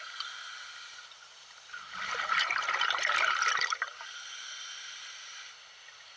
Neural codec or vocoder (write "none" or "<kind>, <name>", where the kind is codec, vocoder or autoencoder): none